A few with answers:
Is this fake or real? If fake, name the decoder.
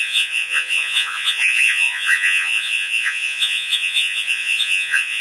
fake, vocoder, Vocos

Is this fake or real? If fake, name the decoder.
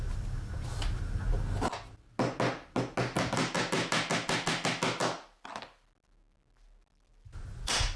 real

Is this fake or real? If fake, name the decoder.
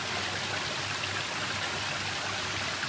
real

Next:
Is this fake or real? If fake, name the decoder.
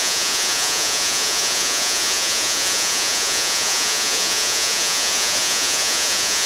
fake, vocoder, Vocos